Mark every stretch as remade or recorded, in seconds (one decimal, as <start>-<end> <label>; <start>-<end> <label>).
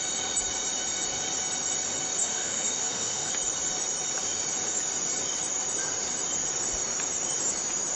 0.0-2.2 recorded; 2.2-3.3 remade; 3.3-8.0 recorded